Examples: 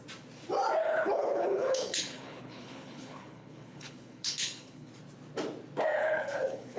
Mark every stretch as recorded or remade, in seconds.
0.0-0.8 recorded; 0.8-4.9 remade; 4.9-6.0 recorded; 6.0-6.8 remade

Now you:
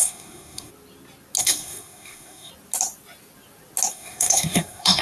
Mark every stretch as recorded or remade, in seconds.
0.0-0.7 remade; 0.7-1.4 recorded; 1.4-2.5 remade; 2.5-3.9 recorded; 3.9-5.0 remade

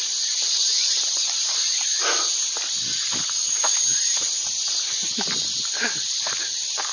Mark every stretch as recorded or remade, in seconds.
0.0-1.9 remade; 1.9-6.0 recorded; 6.0-6.9 remade

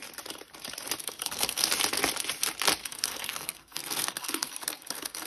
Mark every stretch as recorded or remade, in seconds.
0.0-1.0 recorded; 1.0-1.7 remade; 1.7-2.8 recorded; 2.8-5.3 remade

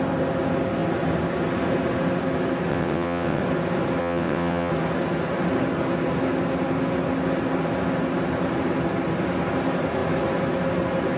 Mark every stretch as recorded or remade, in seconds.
0.0-2.7 recorded; 2.7-3.4 remade; 3.4-4.0 recorded; 4.0-4.7 remade; 4.7-11.2 recorded